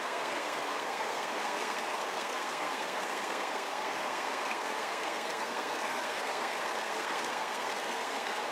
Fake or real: fake